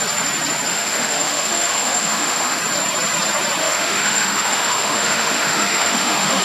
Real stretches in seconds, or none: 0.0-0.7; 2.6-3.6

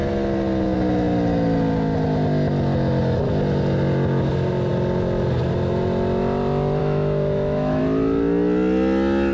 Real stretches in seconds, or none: 0.0-6.8; 7.8-9.3

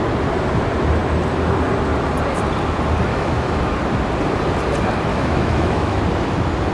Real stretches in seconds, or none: 0.0-3.1; 3.6-5.1; 6.0-6.7

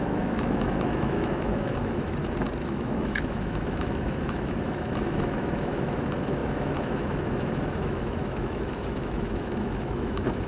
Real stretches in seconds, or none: 2.2-2.7